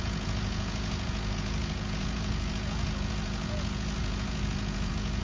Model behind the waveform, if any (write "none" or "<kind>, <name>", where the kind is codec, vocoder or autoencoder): vocoder, Vocos